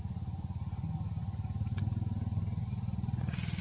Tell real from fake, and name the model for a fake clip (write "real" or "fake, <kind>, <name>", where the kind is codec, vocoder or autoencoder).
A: real